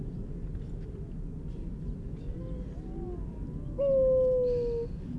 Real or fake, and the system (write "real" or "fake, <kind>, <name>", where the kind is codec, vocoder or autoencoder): real